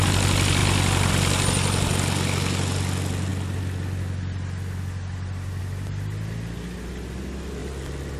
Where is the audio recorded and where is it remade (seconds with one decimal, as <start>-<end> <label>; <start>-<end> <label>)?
0.0-8.2 recorded